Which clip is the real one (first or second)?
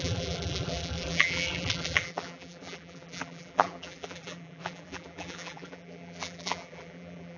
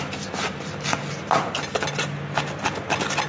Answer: second